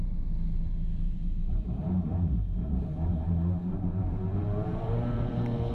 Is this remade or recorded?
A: remade